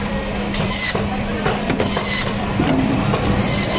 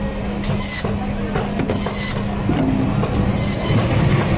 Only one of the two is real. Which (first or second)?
second